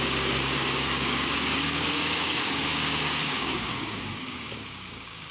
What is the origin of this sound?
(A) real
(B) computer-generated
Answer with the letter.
B